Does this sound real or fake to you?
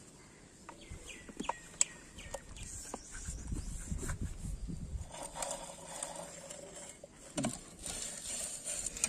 real